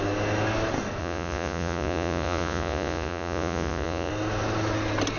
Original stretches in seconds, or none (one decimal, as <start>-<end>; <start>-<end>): 0.0-1.0; 4.1-5.2